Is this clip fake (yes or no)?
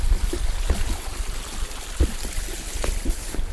no